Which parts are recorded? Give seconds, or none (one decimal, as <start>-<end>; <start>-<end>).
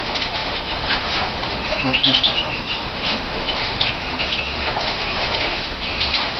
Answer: none